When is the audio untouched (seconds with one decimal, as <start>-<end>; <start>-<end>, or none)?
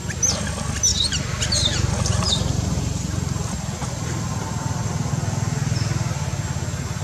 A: 0.0-0.9; 5.1-7.0